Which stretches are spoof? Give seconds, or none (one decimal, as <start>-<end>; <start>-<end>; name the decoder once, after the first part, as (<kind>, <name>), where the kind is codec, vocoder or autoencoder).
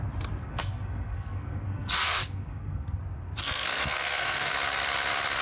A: 0.4-3.0 (codec, SNAC); 3.4-4.5